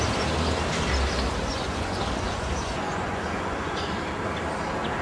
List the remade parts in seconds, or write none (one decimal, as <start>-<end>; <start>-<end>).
1.4-3.9